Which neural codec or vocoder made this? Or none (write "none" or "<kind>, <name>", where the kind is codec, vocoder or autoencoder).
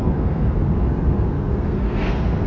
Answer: codec, SNAC